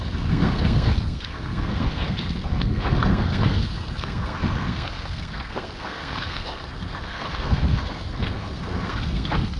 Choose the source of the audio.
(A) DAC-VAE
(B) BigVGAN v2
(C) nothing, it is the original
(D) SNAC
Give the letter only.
D